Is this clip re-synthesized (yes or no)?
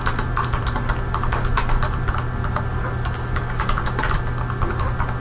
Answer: no